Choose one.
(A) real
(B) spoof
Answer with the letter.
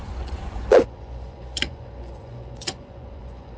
B